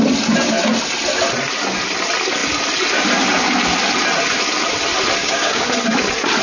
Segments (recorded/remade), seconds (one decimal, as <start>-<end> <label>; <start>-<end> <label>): 0.0-5.2 recorded; 5.2-5.7 remade; 5.7-6.4 recorded